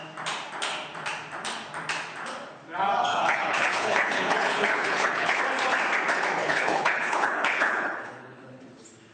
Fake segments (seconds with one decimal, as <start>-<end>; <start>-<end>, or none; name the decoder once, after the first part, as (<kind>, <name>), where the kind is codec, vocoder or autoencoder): 3.1-5.4 (codec, HILCodec); 6.4-8.6